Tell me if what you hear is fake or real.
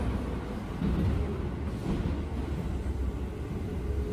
real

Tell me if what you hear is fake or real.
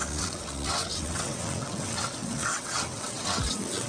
fake